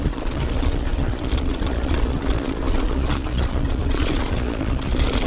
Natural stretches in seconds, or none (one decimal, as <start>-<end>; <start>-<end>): none